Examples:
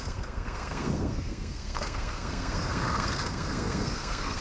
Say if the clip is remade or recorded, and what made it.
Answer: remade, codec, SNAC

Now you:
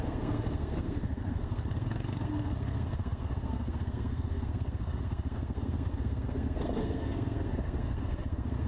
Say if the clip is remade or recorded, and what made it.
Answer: remade, codec, SNAC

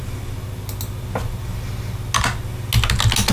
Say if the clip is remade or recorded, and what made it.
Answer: recorded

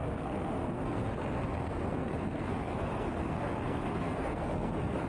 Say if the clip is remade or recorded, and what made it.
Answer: remade, codec, SNAC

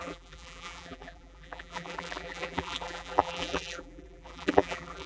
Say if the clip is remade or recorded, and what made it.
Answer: remade, vocoder, BigVGAN v2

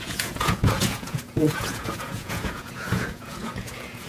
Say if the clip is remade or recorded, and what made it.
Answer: remade, vocoder, Vocos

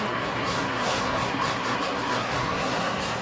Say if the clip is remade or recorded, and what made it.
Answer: remade, codec, SNAC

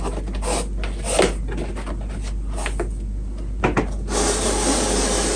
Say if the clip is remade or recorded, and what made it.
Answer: recorded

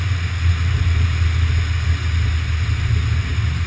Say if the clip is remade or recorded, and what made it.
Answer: recorded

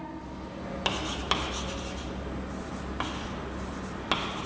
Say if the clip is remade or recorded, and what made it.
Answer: recorded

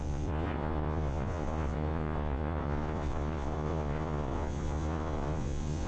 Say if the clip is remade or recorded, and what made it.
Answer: remade, vocoder, Vocos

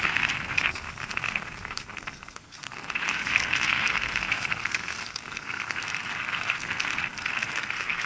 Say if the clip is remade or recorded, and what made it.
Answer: remade, codec, SNAC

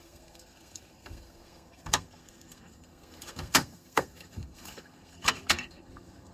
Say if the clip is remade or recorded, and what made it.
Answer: remade, codec, SNAC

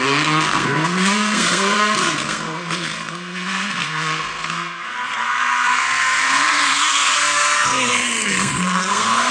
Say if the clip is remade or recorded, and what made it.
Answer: remade, codec, SNAC